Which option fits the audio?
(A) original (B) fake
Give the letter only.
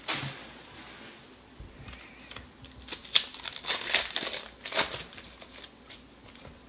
A